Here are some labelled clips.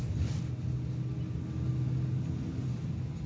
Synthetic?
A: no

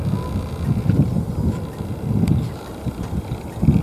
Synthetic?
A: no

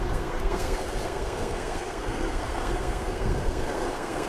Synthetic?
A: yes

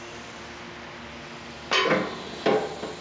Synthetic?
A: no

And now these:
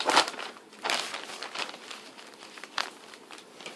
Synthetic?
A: yes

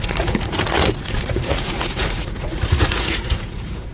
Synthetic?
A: yes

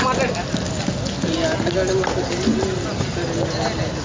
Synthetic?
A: no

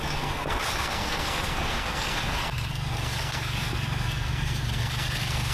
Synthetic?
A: yes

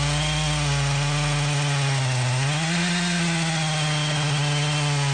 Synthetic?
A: no